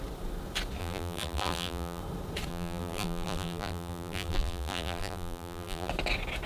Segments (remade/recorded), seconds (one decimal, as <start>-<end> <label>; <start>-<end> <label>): 0.0-0.8 recorded; 0.8-2.0 remade; 2.0-2.5 recorded; 2.5-5.9 remade; 5.9-6.5 recorded